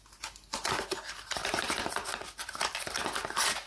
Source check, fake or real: real